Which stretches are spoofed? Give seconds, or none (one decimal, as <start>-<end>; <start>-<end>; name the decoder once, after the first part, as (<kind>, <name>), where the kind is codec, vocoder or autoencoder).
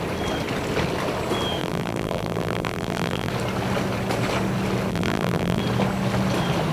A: 1.6-3.3 (vocoder, BigVGAN v2); 4.9-5.6